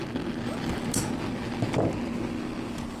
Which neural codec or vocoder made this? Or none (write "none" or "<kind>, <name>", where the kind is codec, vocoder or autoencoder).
none